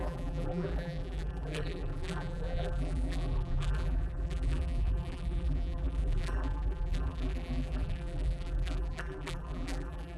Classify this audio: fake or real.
fake